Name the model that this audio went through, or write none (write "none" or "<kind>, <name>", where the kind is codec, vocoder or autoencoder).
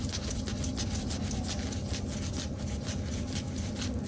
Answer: none